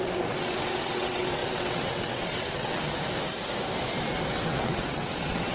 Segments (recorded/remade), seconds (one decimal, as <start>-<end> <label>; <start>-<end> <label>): 0.0-2.8 remade; 2.8-4.3 recorded; 4.3-5.5 remade